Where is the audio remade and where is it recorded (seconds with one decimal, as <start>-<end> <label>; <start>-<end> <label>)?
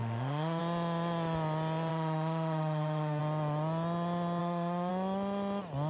0.0-0.6 remade; 0.6-1.9 recorded; 1.9-3.2 remade; 3.2-4.4 recorded; 4.4-4.9 remade; 4.9-5.9 recorded